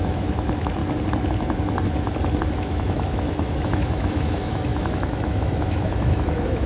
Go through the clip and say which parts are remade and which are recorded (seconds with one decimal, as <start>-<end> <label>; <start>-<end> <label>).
0.0-0.8 remade; 0.8-2.5 recorded; 2.5-6.7 remade